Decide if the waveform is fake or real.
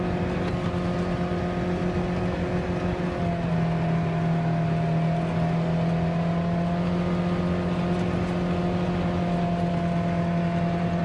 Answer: real